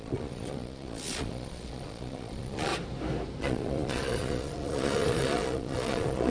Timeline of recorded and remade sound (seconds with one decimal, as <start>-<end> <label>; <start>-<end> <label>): 0.0-2.7 remade; 2.7-3.4 recorded; 3.4-6.3 remade